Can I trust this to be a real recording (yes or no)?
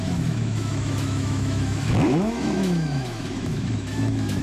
no